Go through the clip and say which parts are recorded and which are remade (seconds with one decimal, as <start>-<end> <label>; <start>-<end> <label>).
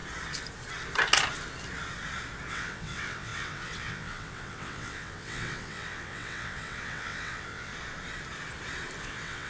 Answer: 0.0-2.5 recorded; 2.5-7.7 remade; 7.7-9.0 recorded; 9.0-9.5 remade